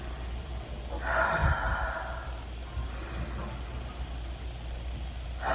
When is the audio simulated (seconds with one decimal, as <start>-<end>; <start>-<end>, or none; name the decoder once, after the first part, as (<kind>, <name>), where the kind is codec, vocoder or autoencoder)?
none